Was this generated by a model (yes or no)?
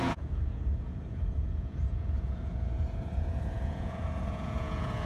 yes